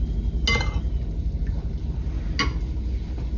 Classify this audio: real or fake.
real